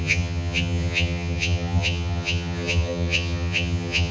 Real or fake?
fake